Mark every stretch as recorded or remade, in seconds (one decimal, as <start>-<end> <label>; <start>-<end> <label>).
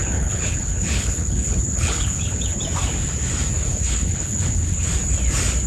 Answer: 0.0-2.6 remade; 2.6-3.7 recorded; 3.7-4.9 remade; 4.9-5.7 recorded